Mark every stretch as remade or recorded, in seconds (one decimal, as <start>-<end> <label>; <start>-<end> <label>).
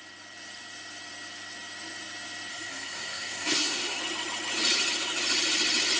0.0-2.5 recorded; 2.5-4.0 remade; 4.0-6.0 recorded